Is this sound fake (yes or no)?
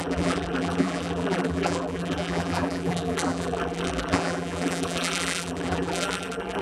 yes